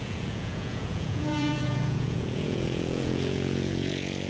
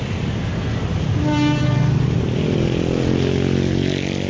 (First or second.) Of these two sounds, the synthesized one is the first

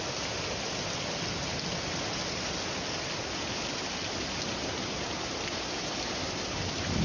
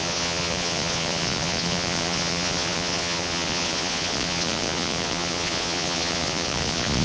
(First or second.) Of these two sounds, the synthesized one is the second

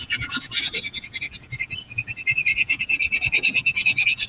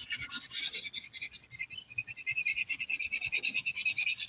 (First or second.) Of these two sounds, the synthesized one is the first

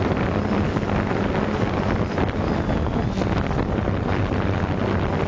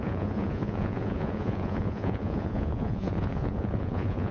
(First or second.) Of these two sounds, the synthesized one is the second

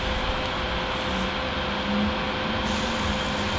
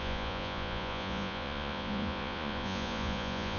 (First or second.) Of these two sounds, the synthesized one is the second